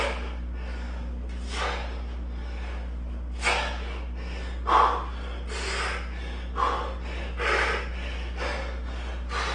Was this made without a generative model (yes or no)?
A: yes